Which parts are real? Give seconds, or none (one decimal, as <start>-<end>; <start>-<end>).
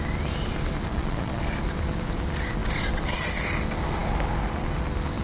0.0-0.9; 1.4-5.2